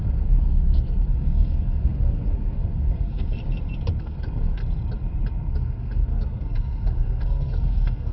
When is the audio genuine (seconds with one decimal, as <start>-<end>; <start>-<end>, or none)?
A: 3.4-4.0; 4.6-5.5